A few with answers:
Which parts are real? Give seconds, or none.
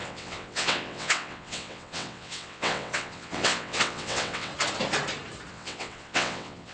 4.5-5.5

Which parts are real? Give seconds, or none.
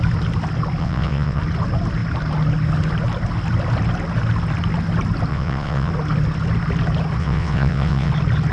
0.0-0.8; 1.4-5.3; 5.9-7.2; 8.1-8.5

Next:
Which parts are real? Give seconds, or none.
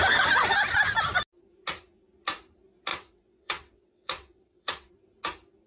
0.0-2.9; 4.9-5.7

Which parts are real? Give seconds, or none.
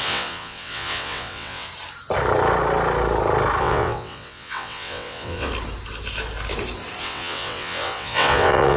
1.7-3.6; 5.5-7.0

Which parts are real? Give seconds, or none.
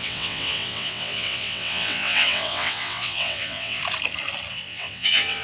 3.8-4.5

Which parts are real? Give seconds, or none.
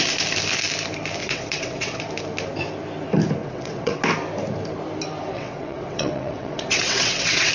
0.0-1.2; 2.0-3.4; 4.0-5.3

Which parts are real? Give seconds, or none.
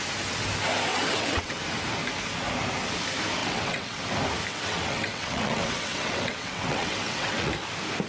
0.0-0.9; 1.6-3.4; 4.0-4.5; 7.5-8.1